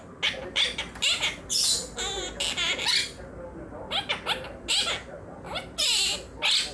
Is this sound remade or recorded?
recorded